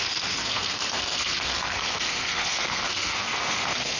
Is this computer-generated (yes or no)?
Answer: yes